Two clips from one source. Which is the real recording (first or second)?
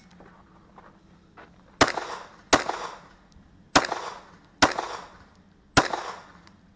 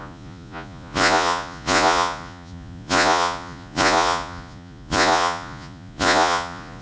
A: first